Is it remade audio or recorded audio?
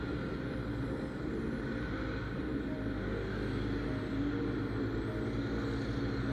recorded